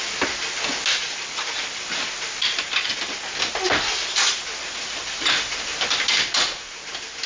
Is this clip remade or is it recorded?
recorded